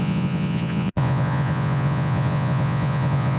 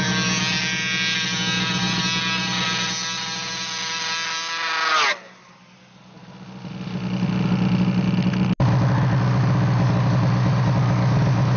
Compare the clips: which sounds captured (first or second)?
second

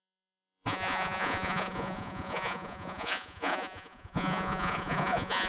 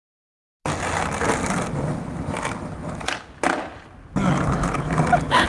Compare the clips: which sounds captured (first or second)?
second